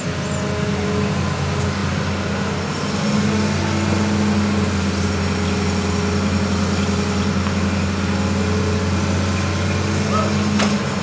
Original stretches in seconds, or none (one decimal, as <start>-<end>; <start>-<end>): 0.0-11.0